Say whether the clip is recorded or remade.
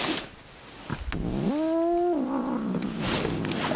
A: recorded